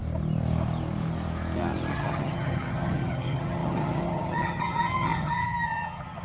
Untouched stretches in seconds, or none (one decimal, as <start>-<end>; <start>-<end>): 0.0-1.9